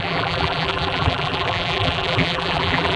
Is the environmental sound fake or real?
fake